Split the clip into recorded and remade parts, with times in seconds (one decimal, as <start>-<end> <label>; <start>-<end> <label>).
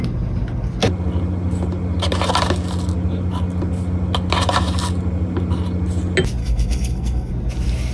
0.0-6.4 recorded; 6.4-7.3 remade; 7.3-7.9 recorded